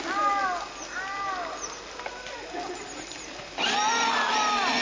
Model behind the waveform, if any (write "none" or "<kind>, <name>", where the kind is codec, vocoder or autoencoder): none